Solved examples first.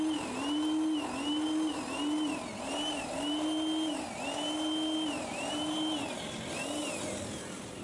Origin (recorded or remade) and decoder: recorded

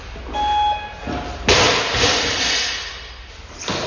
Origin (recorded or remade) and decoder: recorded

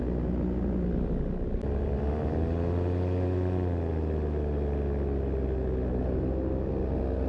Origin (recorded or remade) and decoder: recorded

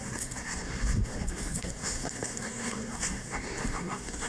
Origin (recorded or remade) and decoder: remade, codec, SNAC